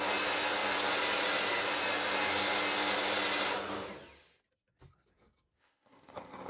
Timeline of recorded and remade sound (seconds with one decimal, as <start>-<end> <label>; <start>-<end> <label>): 0.0-5.6 recorded; 5.6-6.5 remade